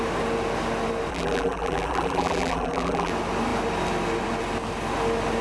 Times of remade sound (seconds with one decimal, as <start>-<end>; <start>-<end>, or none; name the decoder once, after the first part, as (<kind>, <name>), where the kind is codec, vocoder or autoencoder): 1.1-3.1 (vocoder, BigVGAN v2)